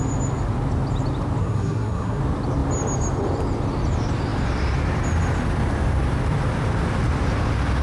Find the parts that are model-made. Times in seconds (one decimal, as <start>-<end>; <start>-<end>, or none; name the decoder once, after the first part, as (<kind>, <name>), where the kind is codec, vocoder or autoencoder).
1.4-2.2 (codec, SNAC)